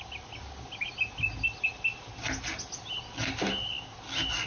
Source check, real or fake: real